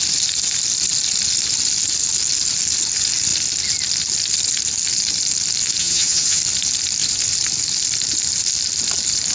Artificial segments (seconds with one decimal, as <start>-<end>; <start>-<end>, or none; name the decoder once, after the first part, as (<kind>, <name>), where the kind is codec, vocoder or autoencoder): 5.8-6.4 (vocoder, HiFi-GAN)